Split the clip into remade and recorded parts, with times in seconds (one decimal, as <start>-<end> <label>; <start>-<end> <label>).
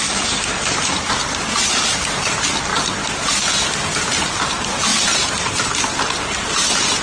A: 0.0-2.7 recorded; 2.7-3.5 remade; 3.5-4.9 recorded; 4.9-5.9 remade; 5.9-7.0 recorded